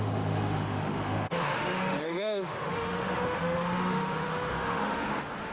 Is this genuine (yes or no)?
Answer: no